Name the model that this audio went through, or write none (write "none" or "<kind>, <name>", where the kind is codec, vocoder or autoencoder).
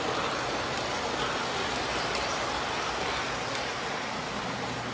none